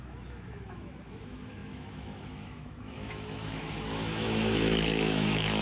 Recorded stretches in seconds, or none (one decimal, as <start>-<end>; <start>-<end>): none